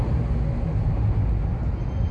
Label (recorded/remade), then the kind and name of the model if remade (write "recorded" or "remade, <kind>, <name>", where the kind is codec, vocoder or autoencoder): recorded